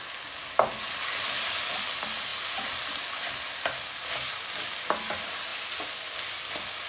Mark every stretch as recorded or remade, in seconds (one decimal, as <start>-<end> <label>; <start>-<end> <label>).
0.0-6.9 recorded